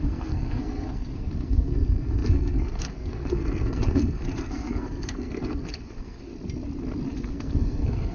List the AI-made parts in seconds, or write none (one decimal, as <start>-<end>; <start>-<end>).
0.0-6.3; 7.3-8.1